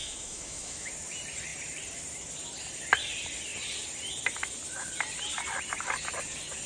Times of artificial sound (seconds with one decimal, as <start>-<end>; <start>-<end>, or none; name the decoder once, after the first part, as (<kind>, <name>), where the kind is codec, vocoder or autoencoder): 0.0-0.9 (autoencoder, DAC-VAE)